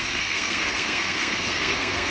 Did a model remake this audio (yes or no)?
yes